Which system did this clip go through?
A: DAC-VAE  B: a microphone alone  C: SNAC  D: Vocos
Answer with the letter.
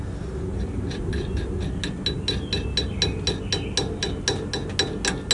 B